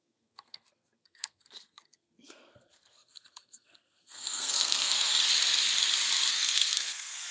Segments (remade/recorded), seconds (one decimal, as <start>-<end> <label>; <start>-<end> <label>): 0.0-5.1 remade; 5.1-6.3 recorded; 6.3-7.3 remade